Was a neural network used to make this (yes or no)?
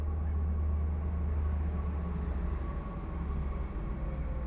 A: no